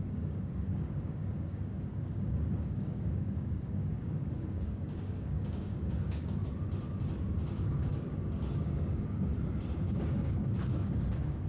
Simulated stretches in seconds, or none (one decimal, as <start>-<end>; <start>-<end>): 0.0-6.4; 7.6-9.3; 10.0-11.5